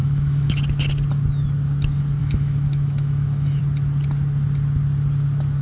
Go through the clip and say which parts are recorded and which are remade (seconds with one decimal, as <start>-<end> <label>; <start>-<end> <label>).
0.0-0.5 remade; 0.5-2.2 recorded; 2.2-3.6 remade; 3.6-5.6 recorded